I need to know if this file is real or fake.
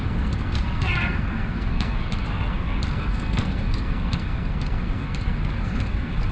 fake